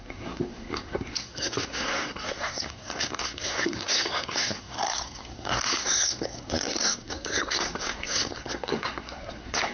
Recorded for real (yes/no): no